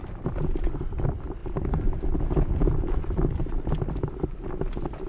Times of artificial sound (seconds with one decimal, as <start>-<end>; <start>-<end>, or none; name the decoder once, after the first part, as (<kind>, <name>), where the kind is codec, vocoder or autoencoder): none